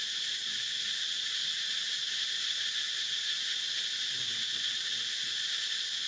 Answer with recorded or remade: recorded